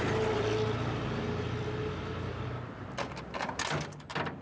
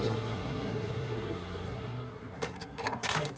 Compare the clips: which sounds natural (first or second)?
first